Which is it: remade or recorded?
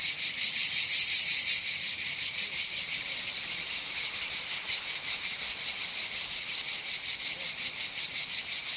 recorded